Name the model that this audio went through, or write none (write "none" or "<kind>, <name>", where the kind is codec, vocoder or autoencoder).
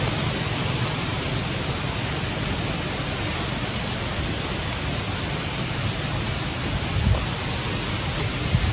none